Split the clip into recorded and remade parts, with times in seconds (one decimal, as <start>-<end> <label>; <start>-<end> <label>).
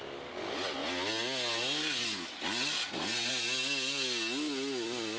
0.0-5.2 recorded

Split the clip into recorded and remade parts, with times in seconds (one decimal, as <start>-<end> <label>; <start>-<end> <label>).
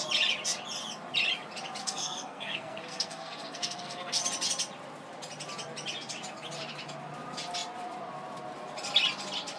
0.0-1.8 recorded; 1.8-4.2 remade; 4.2-9.6 recorded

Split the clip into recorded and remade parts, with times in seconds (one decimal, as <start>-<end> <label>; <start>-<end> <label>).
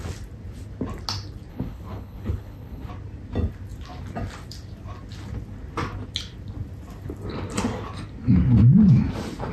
0.0-1.5 recorded; 1.5-2.9 remade; 2.9-9.5 recorded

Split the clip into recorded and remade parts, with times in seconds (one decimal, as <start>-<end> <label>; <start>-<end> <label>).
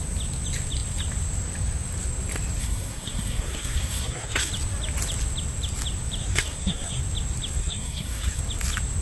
0.0-2.6 recorded; 2.6-4.5 remade; 4.5-6.2 recorded; 6.2-7.0 remade; 7.0-7.6 recorded; 7.6-8.4 remade; 8.4-9.0 recorded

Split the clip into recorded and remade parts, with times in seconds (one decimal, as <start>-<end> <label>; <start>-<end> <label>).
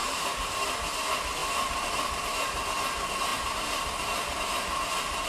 0.0-0.6 remade; 0.6-1.4 recorded; 1.4-2.0 remade; 2.0-3.3 recorded; 3.3-4.4 remade; 4.4-5.3 recorded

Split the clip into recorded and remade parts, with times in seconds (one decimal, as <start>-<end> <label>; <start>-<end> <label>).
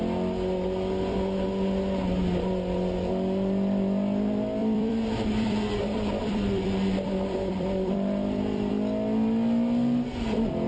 0.0-4.6 recorded; 4.6-8.7 remade; 8.7-10.7 recorded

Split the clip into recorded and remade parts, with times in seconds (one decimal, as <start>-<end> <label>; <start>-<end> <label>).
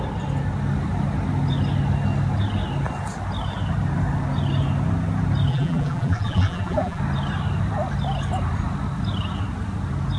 0.0-5.5 recorded; 5.5-7.0 remade; 7.0-10.2 recorded